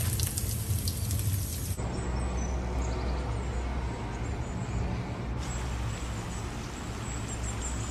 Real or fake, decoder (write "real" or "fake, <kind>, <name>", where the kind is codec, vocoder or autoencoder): real